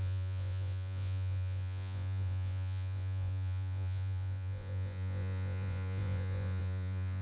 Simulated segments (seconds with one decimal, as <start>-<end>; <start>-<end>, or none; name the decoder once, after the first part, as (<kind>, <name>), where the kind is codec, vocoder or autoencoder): 0.0-7.2 (vocoder, Vocos)